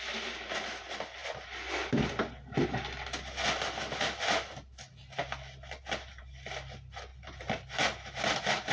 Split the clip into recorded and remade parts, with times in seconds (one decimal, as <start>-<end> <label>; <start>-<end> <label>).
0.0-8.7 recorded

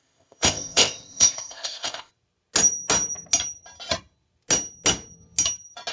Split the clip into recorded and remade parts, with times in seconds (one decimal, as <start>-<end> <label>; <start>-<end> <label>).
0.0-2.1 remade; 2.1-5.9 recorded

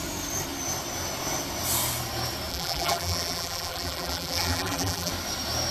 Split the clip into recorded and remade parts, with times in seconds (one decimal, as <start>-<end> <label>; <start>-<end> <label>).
0.0-2.5 recorded; 2.5-5.1 remade; 5.1-5.7 recorded